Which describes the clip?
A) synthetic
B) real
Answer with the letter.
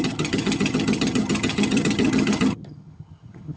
A